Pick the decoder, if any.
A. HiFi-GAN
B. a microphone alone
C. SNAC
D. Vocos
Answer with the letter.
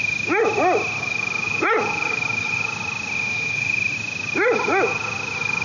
B